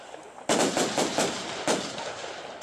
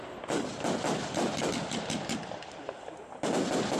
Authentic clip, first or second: first